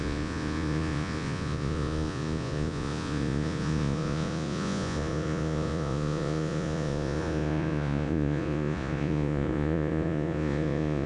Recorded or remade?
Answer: remade